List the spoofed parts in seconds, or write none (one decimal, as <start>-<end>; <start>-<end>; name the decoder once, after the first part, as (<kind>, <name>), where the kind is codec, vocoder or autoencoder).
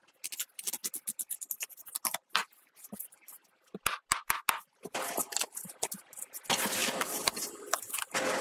6.8-7.5 (vocoder, BigVGAN v2)